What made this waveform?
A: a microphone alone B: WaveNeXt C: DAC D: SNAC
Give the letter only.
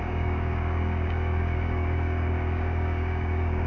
C